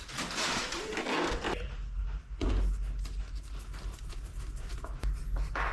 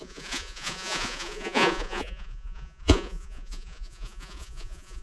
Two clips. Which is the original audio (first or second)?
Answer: first